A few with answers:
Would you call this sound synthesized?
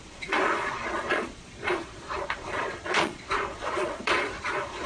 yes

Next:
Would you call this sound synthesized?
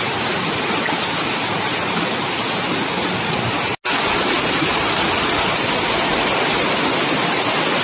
no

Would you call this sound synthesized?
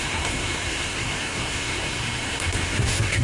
yes